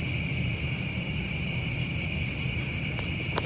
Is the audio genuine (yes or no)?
yes